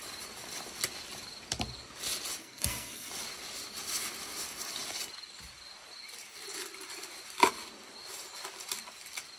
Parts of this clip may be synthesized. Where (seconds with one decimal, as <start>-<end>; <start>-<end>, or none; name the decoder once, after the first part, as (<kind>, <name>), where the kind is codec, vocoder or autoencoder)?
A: 2.4-3.1 (codec, SNAC)